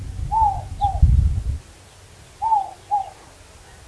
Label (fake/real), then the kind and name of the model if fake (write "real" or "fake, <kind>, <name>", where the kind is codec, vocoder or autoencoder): real